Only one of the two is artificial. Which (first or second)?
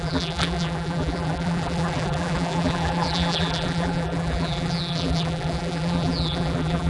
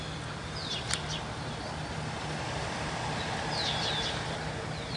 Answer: first